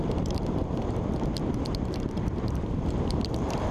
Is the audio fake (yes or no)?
yes